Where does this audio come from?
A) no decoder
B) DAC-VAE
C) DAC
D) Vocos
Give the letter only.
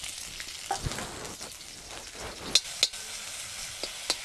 A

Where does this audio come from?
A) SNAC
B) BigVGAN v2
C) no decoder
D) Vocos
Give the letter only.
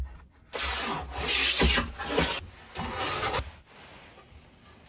C